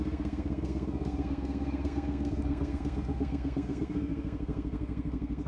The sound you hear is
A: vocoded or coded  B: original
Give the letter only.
A